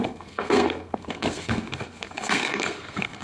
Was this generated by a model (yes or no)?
yes